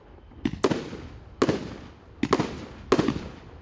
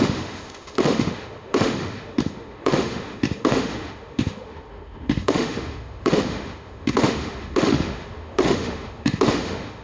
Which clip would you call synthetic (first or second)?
second